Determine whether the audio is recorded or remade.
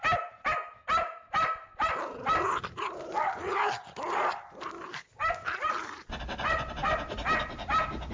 recorded